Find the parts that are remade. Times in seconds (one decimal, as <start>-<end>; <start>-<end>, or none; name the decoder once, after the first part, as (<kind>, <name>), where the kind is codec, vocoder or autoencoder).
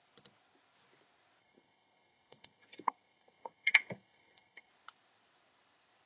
1.4-4.7 (codec, SNAC)